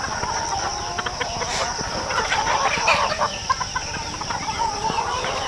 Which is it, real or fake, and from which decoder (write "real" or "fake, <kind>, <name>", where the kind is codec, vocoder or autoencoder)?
fake, vocoder, BigVGAN v2